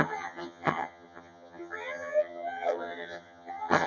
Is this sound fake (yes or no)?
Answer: yes